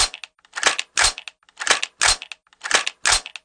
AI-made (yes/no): no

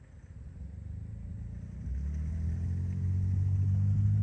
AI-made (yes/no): no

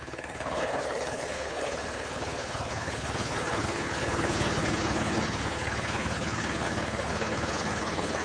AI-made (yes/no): yes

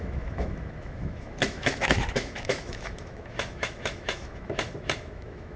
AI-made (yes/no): yes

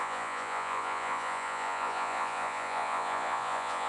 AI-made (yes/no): yes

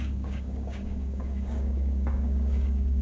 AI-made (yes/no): yes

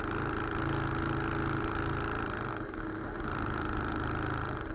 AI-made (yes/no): no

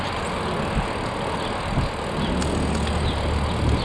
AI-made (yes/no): no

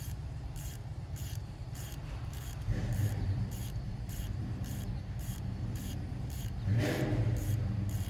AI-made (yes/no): yes